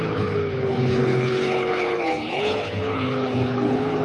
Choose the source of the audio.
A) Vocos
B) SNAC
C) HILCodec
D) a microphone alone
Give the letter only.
C